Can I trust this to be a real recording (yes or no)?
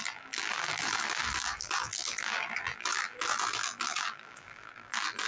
no